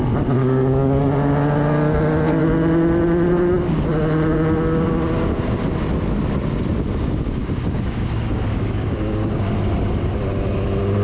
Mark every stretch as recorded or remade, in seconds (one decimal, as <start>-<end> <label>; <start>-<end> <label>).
0.0-0.4 recorded; 0.4-1.0 remade; 1.0-7.4 recorded; 7.4-9.4 remade; 9.4-11.0 recorded